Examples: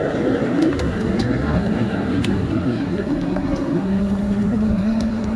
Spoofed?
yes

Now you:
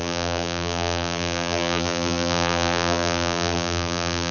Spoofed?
yes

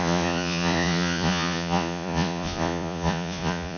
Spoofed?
yes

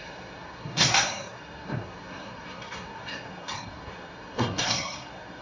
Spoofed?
yes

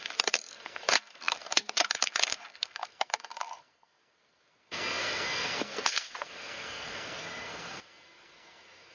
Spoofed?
yes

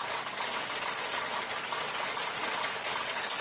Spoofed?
yes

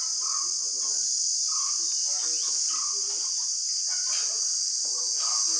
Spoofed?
no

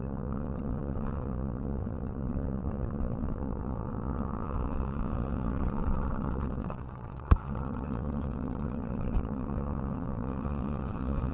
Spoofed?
yes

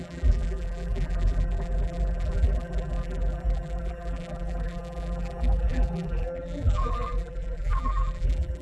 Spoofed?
yes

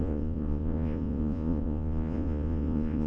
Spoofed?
yes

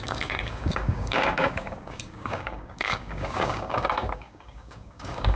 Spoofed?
yes